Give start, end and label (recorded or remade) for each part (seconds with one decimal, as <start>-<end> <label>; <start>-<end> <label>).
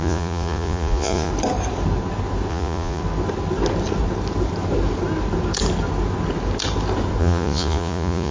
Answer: 0.0-1.3 remade; 1.3-2.5 recorded; 2.5-3.0 remade; 3.0-7.2 recorded; 7.2-8.3 remade